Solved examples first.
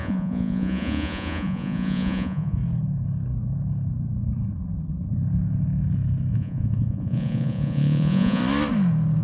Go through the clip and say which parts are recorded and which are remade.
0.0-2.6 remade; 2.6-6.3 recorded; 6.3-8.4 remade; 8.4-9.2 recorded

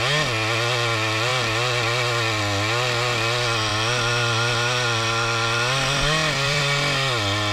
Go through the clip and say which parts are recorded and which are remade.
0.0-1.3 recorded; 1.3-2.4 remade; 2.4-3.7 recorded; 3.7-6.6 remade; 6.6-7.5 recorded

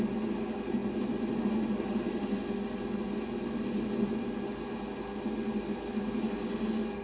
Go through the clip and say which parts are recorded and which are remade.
0.0-7.0 recorded

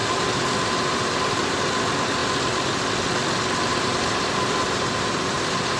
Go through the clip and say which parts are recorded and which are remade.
0.0-1.6 remade; 1.6-3.7 recorded; 3.7-5.8 remade